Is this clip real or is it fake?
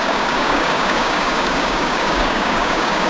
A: fake